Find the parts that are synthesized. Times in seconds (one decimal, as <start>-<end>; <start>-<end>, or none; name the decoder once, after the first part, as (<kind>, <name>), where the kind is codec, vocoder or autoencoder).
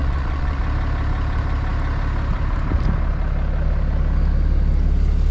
0.0-0.6 (vocoder, Vocos)